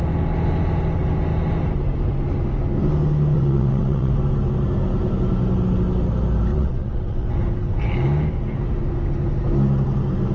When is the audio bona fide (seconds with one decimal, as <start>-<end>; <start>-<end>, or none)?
0.0-3.3; 4.1-6.5; 7.4-10.3